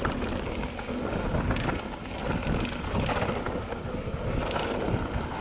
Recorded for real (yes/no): yes